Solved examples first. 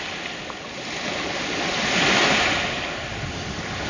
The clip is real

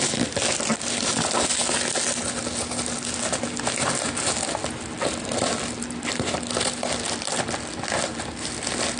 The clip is real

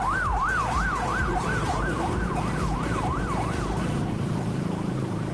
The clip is fake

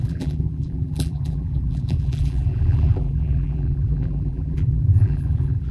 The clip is fake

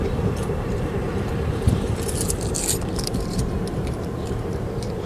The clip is fake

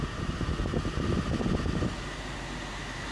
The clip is real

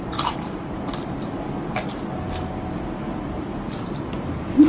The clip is fake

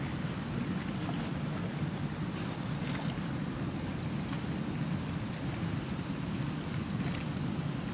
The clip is real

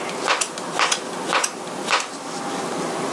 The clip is real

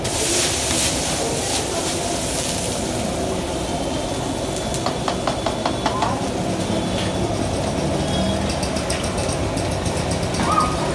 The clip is real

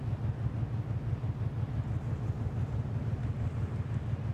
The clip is real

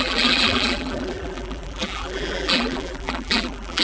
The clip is fake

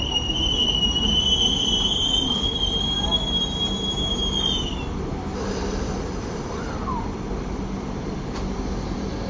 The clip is fake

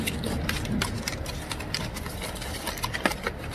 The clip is real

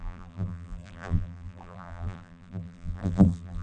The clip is fake